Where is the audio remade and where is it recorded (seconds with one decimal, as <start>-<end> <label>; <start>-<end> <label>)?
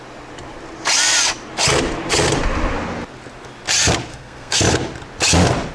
0.0-4.1 recorded; 4.1-4.6 remade; 4.6-5.7 recorded